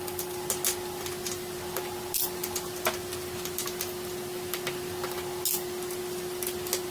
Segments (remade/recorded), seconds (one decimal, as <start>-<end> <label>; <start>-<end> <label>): 0.0-6.9 recorded